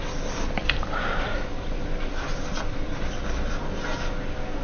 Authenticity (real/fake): real